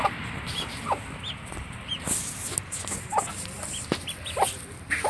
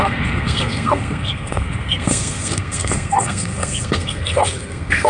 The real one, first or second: first